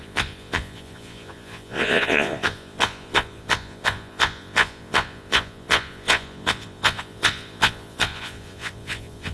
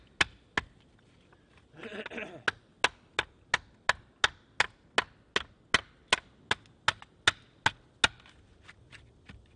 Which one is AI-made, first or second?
first